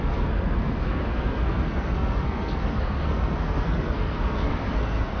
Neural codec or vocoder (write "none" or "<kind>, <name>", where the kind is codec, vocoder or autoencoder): codec, SNAC